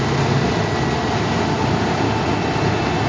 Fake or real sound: real